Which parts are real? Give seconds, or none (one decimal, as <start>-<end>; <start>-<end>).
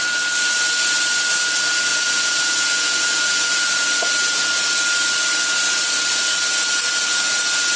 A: 0.0-1.9; 4.5-7.8